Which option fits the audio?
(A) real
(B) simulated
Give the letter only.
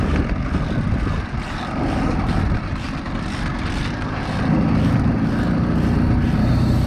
A